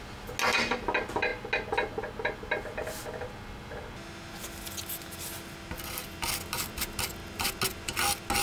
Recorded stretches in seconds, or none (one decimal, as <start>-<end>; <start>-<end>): 0.0-8.4